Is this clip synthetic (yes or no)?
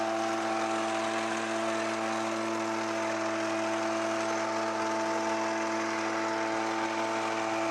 no